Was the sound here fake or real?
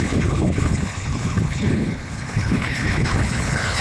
fake